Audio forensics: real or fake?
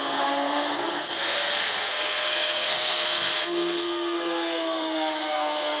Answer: fake